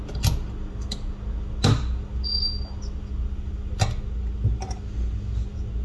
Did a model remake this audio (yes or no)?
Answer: no